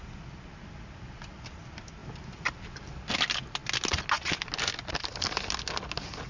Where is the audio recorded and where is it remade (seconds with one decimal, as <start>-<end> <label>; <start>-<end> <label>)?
0.0-6.3 recorded